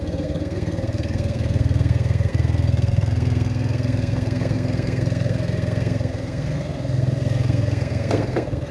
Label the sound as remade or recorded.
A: remade